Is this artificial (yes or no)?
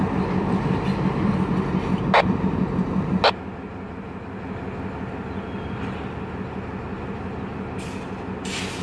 no